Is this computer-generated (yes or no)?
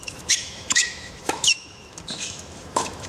yes